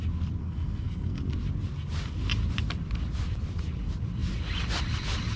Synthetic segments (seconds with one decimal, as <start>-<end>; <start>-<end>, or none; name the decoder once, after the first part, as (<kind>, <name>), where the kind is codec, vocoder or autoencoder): 0.4-1.2 (codec, SNAC)